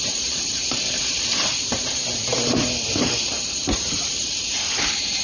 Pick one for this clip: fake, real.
fake